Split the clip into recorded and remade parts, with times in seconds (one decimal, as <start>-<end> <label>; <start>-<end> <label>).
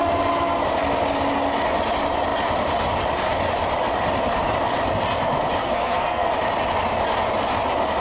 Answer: 0.0-5.6 recorded; 5.6-6.3 remade; 6.3-8.0 recorded